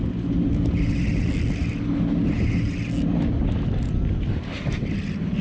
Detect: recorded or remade recorded